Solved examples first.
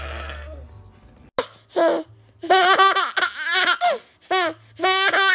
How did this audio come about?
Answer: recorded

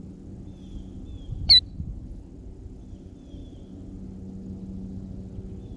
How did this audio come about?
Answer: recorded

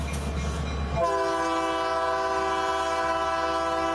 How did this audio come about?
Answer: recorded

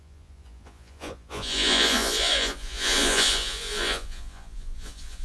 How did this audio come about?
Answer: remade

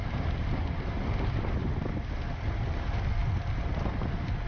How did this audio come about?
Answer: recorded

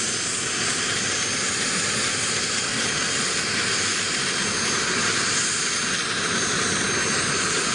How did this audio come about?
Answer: recorded